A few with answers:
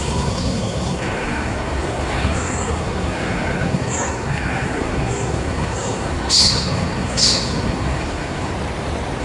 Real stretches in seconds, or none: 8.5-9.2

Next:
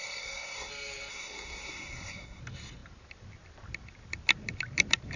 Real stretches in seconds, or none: 0.7-1.1; 2.4-5.2

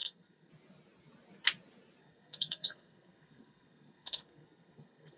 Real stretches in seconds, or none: 0.5-2.0

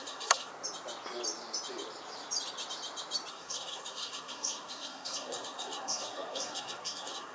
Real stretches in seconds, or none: 0.5-3.3

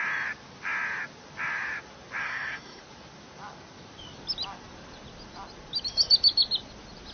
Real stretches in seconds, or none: 0.0-2.2; 2.8-7.1

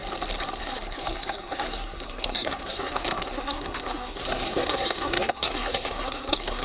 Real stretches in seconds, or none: 0.0-0.6

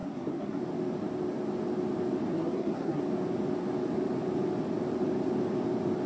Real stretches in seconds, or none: 0.6-2.3; 3.0-6.1